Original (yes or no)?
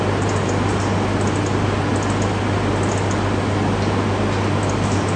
yes